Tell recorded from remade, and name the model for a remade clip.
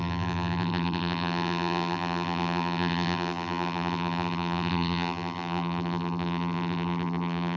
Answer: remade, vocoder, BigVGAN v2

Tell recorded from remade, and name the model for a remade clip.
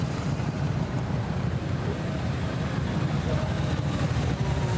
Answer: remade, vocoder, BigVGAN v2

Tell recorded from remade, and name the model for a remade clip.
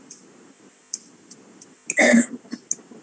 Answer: recorded